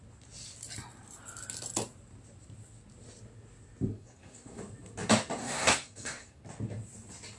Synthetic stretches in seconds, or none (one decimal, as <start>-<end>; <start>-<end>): 3.9-4.6; 5.4-6.4